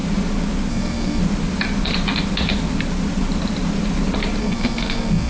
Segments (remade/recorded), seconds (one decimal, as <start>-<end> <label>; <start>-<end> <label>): 0.0-0.7 recorded; 0.7-1.2 remade; 1.2-4.4 recorded; 4.4-5.3 remade